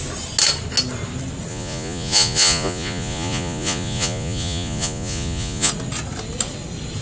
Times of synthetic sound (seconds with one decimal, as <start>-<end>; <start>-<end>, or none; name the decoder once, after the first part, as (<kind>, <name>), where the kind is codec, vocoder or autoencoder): 1.5-5.7 (vocoder, Vocos)